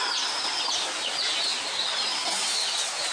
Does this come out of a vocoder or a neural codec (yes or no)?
yes